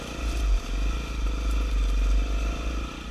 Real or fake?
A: real